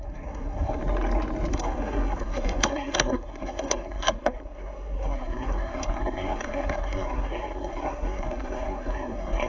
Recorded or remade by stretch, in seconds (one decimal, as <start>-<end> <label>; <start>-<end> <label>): 0.0-0.8 remade; 0.8-1.5 recorded; 1.5-9.5 remade